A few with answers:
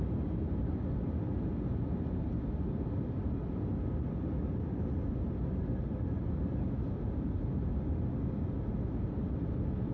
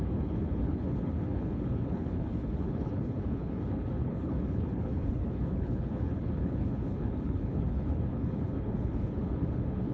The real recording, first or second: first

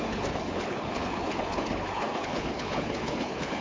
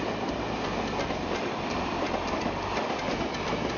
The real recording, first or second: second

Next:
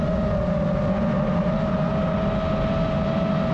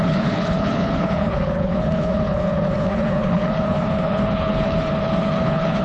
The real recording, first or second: first